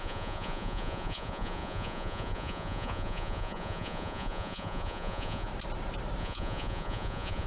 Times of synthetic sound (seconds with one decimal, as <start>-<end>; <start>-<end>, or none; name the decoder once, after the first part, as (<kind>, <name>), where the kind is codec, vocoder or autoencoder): 0.0-5.5 (vocoder, Vocos); 6.2-7.5